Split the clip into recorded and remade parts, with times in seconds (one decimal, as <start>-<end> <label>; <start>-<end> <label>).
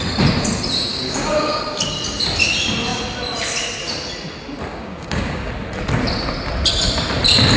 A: 0.0-0.9 recorded; 0.9-1.6 remade; 1.6-4.7 recorded; 4.7-5.5 remade; 5.5-7.6 recorded